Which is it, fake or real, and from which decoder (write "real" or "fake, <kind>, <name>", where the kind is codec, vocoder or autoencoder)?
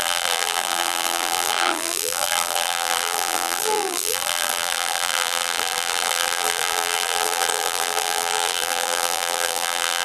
fake, vocoder, BigVGAN v2